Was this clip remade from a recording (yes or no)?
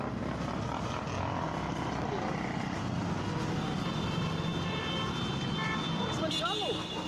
no